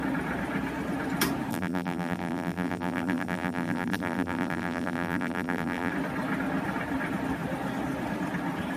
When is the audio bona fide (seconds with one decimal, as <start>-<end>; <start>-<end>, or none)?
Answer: 0.0-1.5; 5.9-8.8